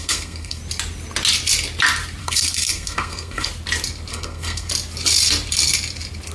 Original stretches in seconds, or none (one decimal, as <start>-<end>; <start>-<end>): 0.6-2.2; 3.5-4.1; 4.7-6.3